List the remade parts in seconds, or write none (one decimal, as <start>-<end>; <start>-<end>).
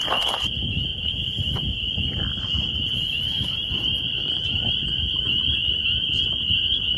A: 0.0-5.8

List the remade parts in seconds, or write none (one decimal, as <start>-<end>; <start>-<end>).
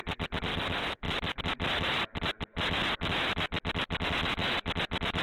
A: 0.5-1.4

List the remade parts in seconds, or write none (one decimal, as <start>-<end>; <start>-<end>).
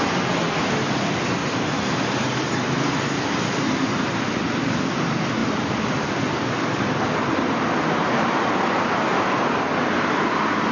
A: 1.4-2.6; 5.4-7.9; 9.1-10.1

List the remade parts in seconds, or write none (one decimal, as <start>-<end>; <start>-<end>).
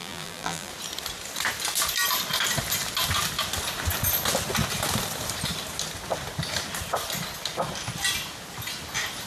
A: 0.0-0.7